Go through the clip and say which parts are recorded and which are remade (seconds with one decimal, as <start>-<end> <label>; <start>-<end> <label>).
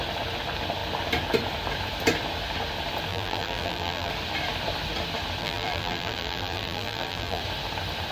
0.0-3.1 recorded; 3.1-4.1 remade; 4.1-5.4 recorded; 5.4-7.4 remade; 7.4-8.1 recorded